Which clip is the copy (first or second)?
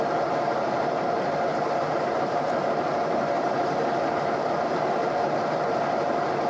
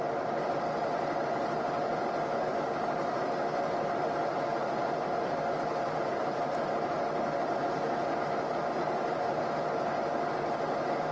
first